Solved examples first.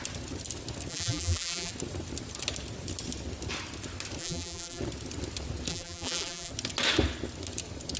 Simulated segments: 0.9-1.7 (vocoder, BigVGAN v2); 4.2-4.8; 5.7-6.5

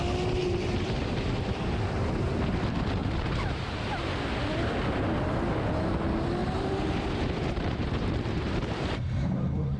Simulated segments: 0.4-2.3 (vocoder, BigVGAN v2); 3.0-4.1; 6.4-9.8

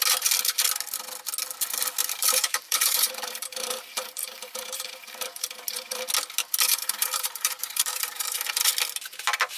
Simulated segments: 2.0-6.1 (vocoder, BigVGAN v2); 6.7-8.5

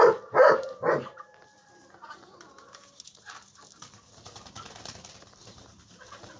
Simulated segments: 0.4-4.2 (vocoder, BigVGAN v2)

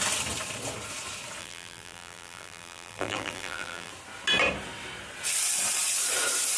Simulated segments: 1.4-3.9 (vocoder, BigVGAN v2)

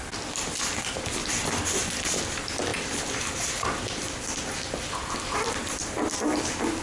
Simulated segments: none

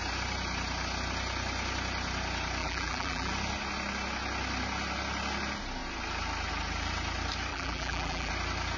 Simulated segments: 2.6-3.3 (vocoder, BigVGAN v2); 7.5-8.3

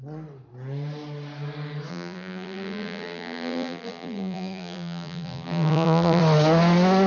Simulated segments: 1.9-6.2 (vocoder, BigVGAN v2)